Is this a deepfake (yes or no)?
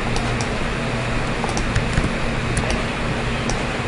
no